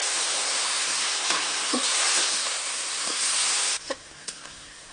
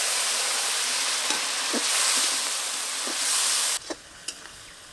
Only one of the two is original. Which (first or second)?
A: second